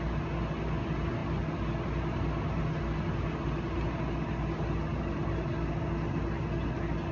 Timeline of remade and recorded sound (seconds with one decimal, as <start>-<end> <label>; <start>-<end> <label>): 0.0-7.1 recorded

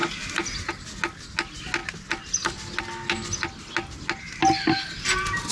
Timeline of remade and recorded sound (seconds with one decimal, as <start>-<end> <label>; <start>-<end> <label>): 0.0-5.5 recorded